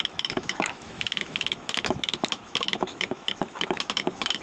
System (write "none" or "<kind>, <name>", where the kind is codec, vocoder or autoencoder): autoencoder, DAC-VAE